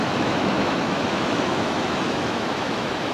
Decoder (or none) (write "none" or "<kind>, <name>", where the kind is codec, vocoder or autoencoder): autoencoder, DAC-VAE